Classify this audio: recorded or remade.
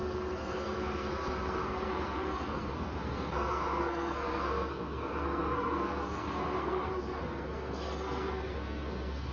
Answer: remade